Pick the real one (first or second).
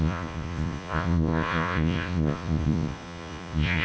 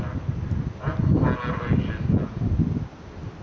second